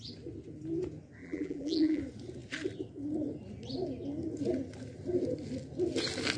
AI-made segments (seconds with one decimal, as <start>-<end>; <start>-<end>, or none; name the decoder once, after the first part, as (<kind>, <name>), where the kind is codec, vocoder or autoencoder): 1.2-2.0 (vocoder, BigVGAN v2)